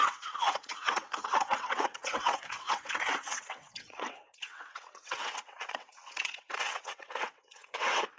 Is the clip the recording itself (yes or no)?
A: no